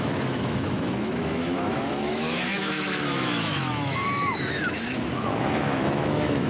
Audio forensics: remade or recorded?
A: remade